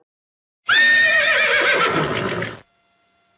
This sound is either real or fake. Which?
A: real